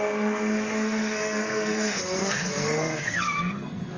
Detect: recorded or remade remade